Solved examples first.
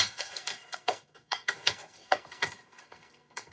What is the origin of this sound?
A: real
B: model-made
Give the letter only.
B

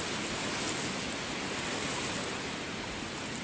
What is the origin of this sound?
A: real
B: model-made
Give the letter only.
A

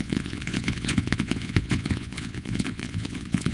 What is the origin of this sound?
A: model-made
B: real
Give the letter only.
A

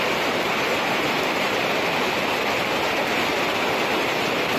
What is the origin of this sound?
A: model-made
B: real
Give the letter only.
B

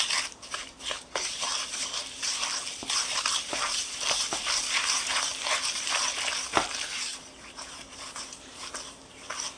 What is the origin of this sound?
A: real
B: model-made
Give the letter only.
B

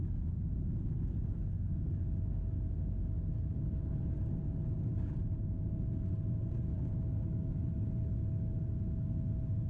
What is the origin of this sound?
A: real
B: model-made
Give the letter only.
A